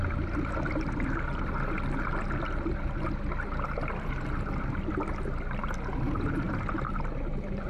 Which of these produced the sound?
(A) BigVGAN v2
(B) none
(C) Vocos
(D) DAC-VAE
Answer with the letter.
B